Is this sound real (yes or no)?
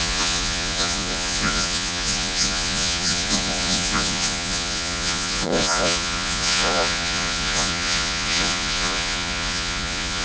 no